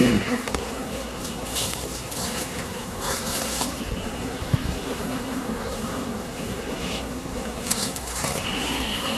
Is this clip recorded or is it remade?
remade